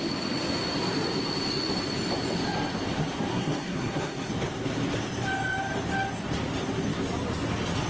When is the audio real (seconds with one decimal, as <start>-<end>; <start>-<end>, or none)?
0.0-3.3; 4.3-7.9